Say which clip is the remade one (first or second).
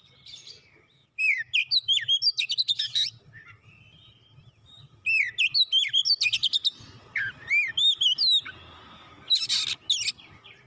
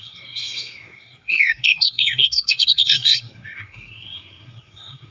second